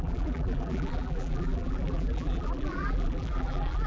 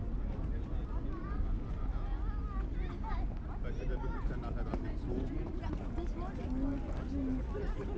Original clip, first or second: second